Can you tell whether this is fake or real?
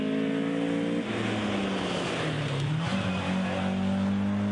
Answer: real